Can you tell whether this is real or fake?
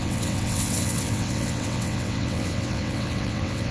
fake